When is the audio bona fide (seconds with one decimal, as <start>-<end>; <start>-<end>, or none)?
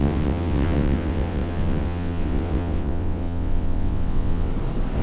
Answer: 4.5-5.0